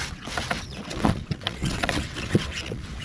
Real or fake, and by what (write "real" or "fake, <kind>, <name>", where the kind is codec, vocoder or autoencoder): fake, vocoder, WaveNeXt